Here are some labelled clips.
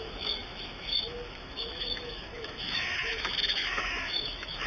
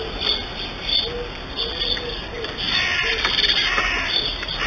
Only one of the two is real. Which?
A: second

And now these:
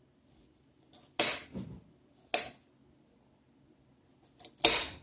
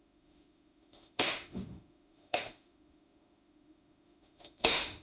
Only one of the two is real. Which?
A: first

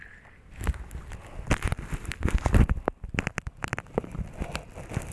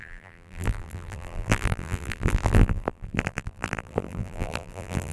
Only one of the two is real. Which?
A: first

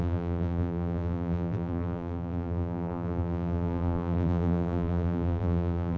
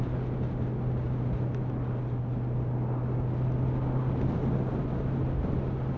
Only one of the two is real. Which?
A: second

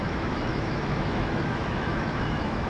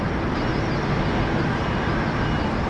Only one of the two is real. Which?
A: second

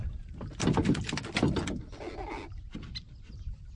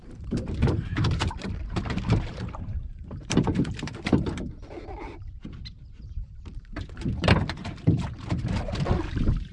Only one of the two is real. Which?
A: first